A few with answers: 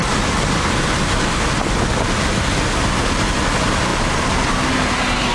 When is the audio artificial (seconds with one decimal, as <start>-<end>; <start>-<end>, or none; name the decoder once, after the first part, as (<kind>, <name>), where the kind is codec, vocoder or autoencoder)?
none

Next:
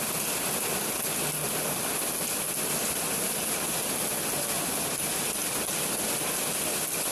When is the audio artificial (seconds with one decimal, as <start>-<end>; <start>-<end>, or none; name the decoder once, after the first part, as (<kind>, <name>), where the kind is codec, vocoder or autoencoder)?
none

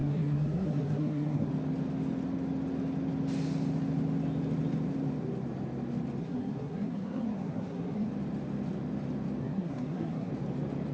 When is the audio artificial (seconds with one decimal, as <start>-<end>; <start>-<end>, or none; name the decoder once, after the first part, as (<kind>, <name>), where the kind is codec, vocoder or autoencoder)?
0.0-1.5 (codec, SNAC); 6.2-8.1; 9.4-10.3

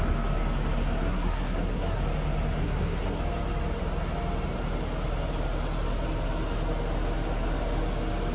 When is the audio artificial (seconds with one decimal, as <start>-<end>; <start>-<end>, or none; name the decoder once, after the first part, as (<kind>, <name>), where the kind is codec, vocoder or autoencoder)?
1.0-2.0 (codec, SNAC); 2.6-3.2

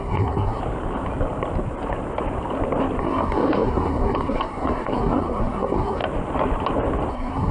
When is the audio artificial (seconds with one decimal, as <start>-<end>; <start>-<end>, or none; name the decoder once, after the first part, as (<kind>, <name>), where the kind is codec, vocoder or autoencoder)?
0.0-0.6 (codec, SNAC); 3.0-6.0; 7.1-7.5

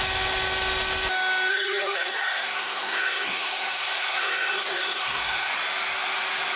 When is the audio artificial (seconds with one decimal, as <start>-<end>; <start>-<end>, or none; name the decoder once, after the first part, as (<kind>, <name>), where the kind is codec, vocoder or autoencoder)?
1.5-5.5 (codec, SNAC)

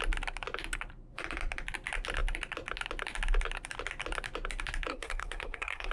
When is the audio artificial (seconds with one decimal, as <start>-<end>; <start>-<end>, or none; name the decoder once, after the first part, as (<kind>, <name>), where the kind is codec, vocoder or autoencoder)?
4.9-5.9 (codec, SNAC)

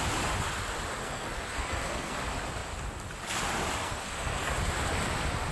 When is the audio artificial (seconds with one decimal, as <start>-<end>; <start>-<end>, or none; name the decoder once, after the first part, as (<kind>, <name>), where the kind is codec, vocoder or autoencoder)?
1.0-2.2 (codec, SNAC); 3.8-4.5